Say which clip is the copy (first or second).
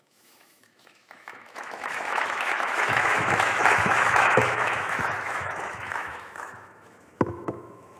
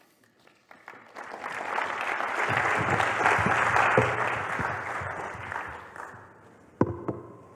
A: first